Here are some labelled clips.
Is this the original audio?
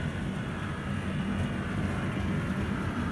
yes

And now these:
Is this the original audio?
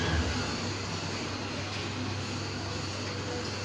yes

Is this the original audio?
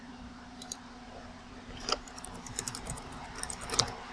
no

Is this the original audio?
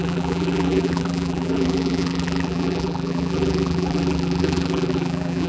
no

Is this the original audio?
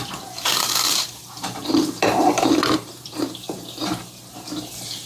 no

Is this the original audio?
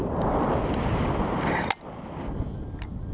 yes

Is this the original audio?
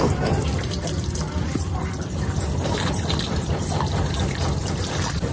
no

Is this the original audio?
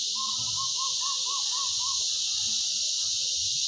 yes